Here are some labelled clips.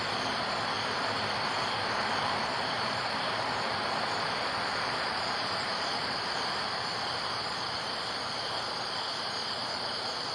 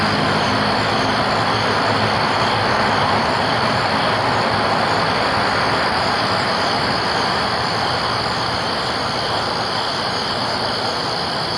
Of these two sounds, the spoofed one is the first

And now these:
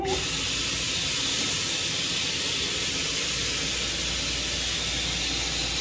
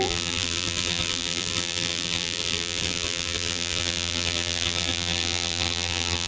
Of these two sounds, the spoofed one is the second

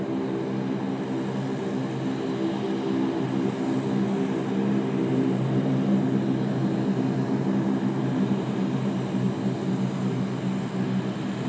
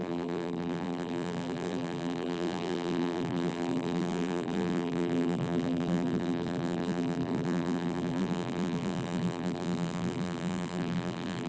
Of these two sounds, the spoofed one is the second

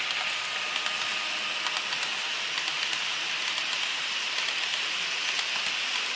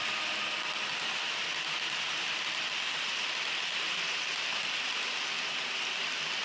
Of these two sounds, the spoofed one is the second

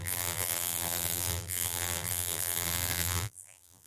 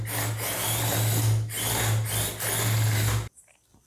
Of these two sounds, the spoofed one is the first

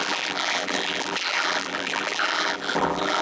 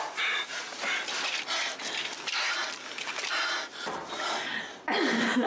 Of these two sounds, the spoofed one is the first